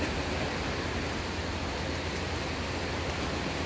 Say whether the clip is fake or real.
real